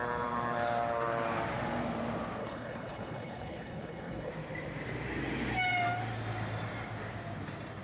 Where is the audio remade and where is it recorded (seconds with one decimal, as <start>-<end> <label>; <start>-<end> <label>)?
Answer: 0.0-2.4 recorded; 2.4-4.3 remade; 4.3-7.8 recorded